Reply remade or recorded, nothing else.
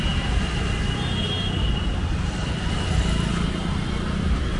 recorded